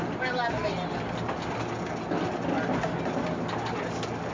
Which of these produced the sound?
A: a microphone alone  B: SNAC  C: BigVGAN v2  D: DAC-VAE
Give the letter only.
A